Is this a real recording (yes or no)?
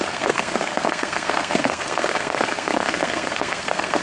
no